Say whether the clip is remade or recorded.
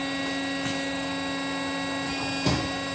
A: recorded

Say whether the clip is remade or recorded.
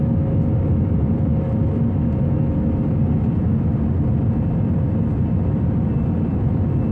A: recorded